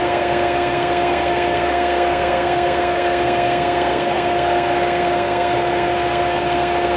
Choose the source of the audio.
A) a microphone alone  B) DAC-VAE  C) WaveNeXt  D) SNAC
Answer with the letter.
D